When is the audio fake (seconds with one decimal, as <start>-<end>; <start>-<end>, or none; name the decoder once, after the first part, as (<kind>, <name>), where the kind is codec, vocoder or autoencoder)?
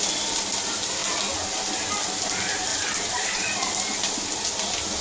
2.7-3.7 (vocoder, BigVGAN v2)